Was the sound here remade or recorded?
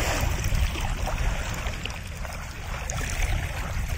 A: remade